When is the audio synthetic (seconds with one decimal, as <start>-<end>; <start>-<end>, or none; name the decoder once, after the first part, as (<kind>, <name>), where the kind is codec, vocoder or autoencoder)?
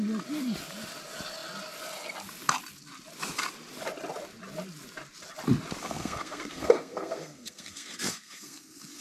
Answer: 5.8-9.0 (codec, SNAC)